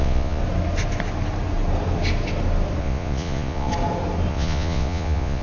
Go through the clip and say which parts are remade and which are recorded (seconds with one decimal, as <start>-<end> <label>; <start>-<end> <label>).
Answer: 0.0-0.4 remade; 0.4-2.8 recorded; 2.8-3.7 remade; 3.7-4.3 recorded; 4.3-5.4 remade